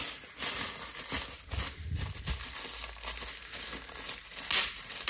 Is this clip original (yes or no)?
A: yes